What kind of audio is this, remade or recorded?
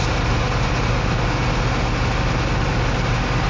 recorded